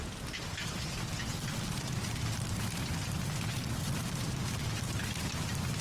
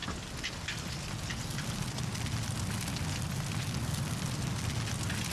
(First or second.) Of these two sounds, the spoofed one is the first